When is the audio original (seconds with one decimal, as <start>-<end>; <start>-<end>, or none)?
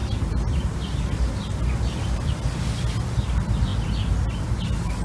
0.0-5.0